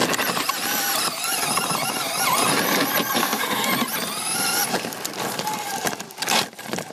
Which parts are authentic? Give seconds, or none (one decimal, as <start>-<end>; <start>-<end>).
0.0-3.2; 3.7-6.9